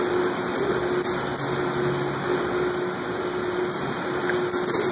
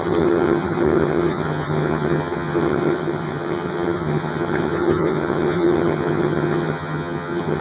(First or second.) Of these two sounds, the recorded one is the first